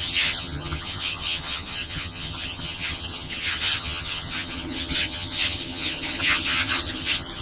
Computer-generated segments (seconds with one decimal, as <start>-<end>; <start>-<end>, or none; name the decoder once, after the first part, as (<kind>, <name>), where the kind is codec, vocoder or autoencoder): 0.0-7.4 (vocoder, HiFi-GAN)

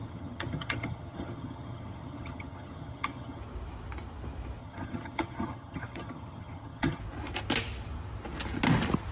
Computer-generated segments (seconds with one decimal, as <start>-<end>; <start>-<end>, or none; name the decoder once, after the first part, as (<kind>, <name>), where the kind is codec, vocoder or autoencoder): 0.0-3.4 (vocoder, HiFi-GAN); 4.6-7.0

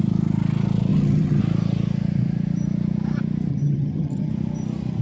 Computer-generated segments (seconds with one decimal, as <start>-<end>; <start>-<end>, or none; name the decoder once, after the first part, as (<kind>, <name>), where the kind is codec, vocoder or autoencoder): 0.9-1.4 (vocoder, HiFi-GAN); 3.5-4.3

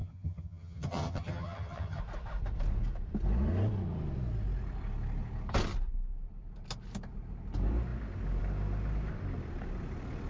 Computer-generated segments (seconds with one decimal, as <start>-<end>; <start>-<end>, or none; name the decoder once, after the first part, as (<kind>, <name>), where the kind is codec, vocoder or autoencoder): 0.0-2.0 (vocoder, HiFi-GAN)